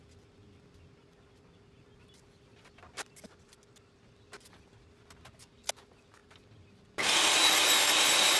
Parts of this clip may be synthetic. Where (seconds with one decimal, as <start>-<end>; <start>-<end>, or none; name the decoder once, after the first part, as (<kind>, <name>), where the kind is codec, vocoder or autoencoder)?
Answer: none